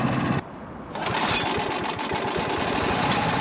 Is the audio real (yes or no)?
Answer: yes